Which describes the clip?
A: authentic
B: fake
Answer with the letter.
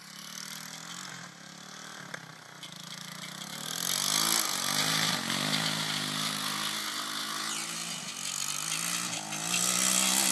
A